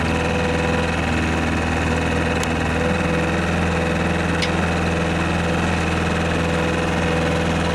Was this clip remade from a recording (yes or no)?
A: no